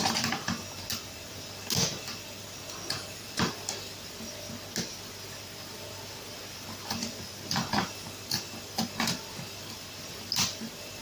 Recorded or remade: recorded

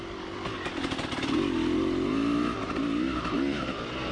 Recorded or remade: recorded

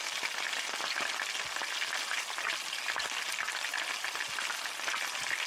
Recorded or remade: recorded